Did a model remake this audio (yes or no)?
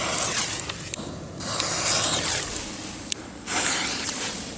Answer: no